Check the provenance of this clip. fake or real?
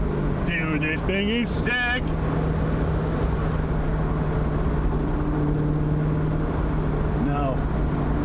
real